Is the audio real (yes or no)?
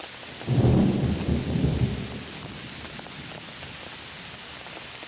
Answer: yes